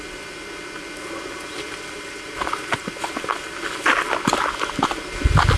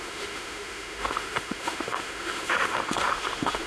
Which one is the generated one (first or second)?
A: second